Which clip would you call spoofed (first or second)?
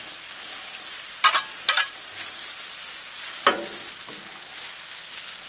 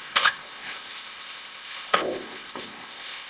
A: second